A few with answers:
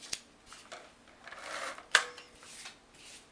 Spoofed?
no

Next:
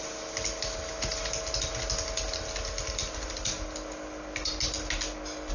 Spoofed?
no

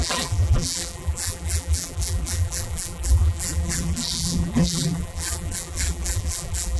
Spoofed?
yes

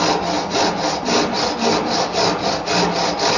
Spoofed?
no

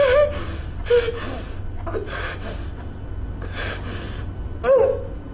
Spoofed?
no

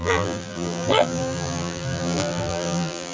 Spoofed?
yes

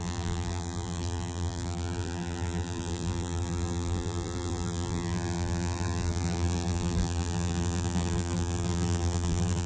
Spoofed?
yes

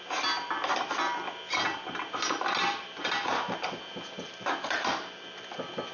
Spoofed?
no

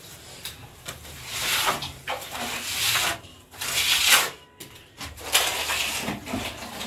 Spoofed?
no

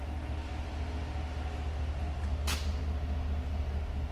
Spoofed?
no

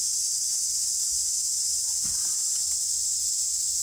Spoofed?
no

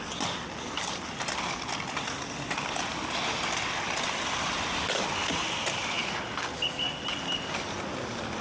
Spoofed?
no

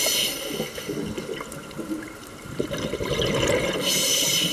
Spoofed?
yes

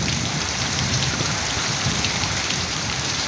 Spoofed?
yes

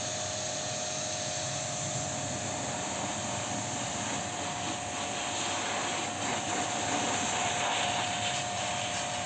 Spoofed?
yes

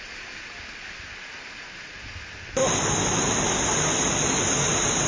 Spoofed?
no